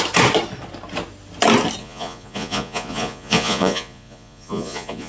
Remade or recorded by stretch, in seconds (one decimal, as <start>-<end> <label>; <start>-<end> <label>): 0.0-1.8 recorded; 1.8-5.1 remade